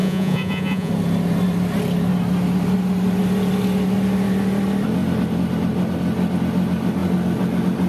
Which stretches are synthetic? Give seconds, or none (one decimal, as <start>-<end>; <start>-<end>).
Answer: 0.0-0.9